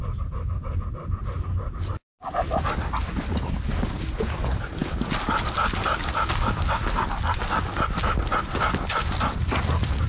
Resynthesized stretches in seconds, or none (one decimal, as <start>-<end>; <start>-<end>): none